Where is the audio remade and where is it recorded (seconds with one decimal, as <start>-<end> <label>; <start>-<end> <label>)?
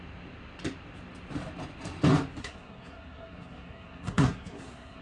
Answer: 0.0-2.4 recorded; 2.4-5.0 remade